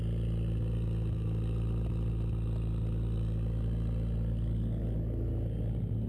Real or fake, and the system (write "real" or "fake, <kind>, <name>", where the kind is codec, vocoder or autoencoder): real